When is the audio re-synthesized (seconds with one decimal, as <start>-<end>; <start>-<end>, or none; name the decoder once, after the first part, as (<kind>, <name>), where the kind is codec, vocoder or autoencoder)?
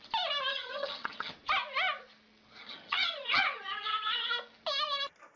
0.5-1.3 (vocoder, HiFi-GAN); 2.6-4.3